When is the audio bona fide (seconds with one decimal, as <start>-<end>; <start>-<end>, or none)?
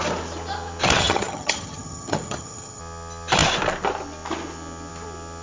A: 0.0-1.0; 2.8-5.4